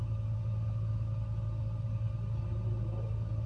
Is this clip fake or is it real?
real